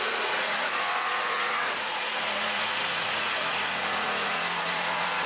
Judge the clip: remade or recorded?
remade